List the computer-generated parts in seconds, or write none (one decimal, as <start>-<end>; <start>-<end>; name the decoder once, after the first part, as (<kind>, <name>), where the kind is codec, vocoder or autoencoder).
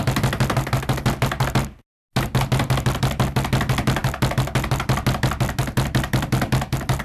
none